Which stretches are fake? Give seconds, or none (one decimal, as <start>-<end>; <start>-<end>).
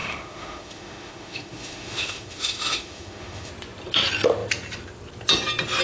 0.0-3.5